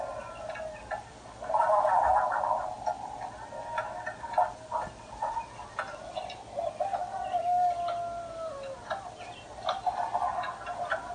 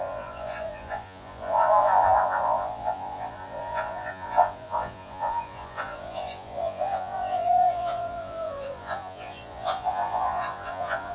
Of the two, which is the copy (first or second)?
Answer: second